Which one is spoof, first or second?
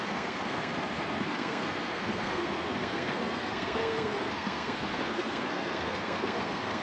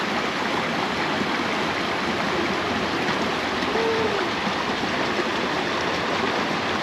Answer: first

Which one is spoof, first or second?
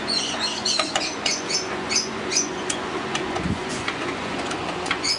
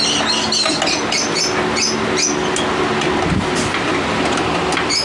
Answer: first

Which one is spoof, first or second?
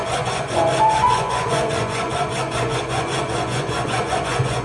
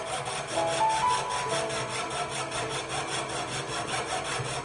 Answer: first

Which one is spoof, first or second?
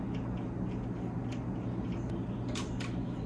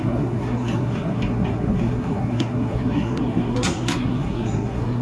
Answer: second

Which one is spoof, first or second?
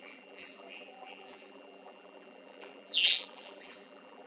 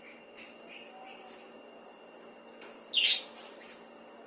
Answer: first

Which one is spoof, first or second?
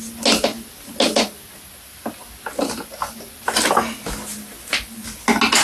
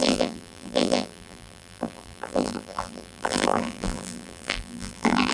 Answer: second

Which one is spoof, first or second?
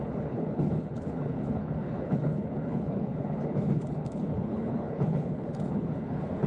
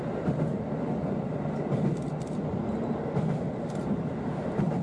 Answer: first